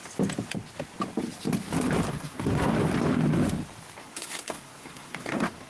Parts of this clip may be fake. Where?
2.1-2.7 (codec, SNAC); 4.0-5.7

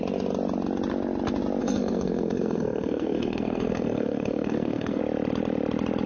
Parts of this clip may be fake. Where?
1.6-5.0 (codec, SNAC)

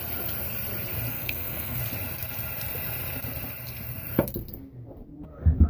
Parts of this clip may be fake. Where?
1.1-1.8 (codec, SNAC)

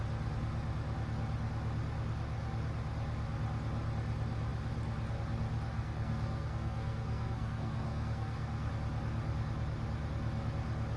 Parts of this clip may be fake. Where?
5.7-8.7 (codec, SNAC)

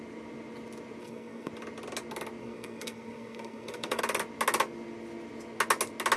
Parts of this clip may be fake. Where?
1.0-1.5 (codec, SNAC); 2.4-4.0

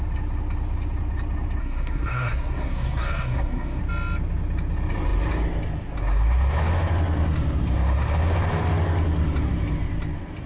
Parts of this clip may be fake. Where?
1.6-3.8 (codec, SNAC)